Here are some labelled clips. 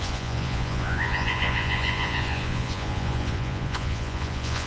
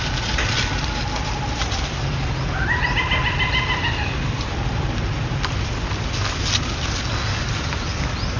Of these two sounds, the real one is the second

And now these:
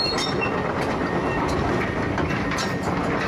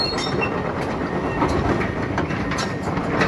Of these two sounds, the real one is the first